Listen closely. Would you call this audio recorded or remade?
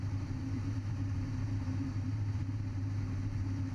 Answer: remade